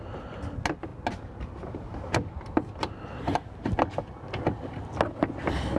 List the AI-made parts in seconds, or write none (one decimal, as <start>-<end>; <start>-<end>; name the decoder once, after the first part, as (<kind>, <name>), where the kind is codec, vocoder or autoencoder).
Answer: none

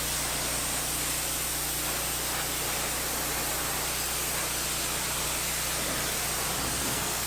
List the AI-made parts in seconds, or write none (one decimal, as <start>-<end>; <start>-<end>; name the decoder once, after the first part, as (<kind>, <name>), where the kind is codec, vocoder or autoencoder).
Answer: 6.8-7.3 (codec, SNAC)

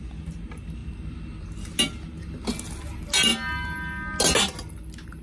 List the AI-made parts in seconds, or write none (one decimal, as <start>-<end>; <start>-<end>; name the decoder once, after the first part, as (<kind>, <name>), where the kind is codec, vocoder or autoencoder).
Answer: none

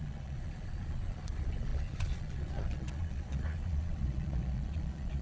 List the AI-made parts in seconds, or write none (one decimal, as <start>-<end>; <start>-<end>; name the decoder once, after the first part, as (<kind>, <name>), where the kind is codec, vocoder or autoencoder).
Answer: 0.0-5.2 (vocoder, Vocos)

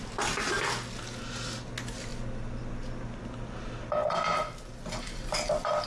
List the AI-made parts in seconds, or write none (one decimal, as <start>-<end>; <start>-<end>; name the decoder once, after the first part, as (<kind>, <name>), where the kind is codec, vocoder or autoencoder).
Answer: none

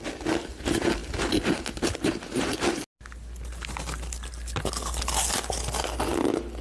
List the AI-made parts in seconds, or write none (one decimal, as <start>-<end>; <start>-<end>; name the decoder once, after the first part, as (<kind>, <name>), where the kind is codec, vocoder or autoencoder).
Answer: none

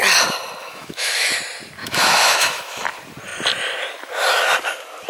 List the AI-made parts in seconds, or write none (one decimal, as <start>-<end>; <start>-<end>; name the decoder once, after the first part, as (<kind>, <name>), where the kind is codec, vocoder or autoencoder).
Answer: 0.6-1.3 (autoencoder, DAC-VAE); 1.8-2.8

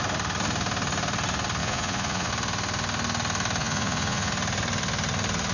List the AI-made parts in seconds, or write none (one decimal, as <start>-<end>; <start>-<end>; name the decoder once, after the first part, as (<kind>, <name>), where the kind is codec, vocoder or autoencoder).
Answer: 1.6-2.3 (vocoder, Vocos); 3.6-4.3